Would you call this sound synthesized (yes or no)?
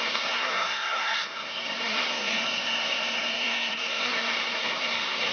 yes